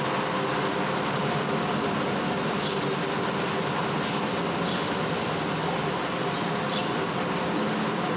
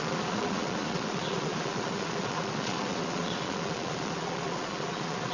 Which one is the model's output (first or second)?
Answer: second